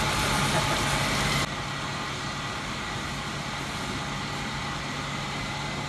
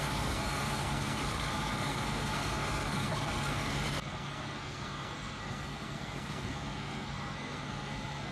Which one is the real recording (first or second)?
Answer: first